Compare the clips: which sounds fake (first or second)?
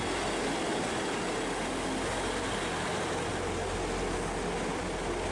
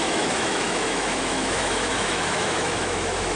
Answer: second